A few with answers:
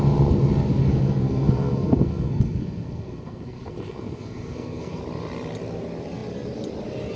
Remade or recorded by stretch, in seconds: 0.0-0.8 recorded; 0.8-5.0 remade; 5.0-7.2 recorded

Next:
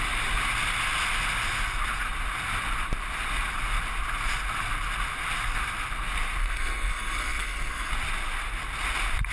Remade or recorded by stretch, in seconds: 0.0-6.4 recorded; 6.4-7.9 remade; 7.9-9.3 recorded

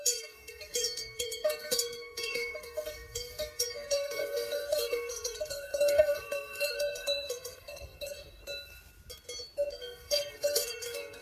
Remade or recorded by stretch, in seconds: 0.0-8.4 remade; 8.4-9.7 recorded; 9.7-11.2 remade

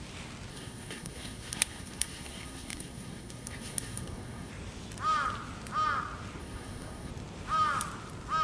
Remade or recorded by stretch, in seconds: 0.0-0.5 recorded; 0.5-4.5 remade; 4.5-6.4 recorded; 6.4-7.1 remade; 7.1-8.4 recorded

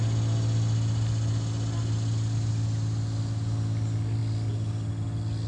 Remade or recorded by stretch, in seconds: 0.0-5.5 recorded

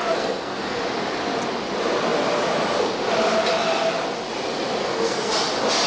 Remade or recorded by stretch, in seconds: 0.0-0.8 remade; 0.8-4.8 recorded; 4.8-5.3 remade; 5.3-5.9 recorded

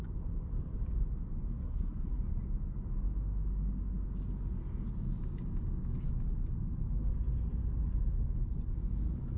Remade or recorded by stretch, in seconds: 0.0-1.6 recorded; 1.6-2.2 remade; 2.2-9.4 recorded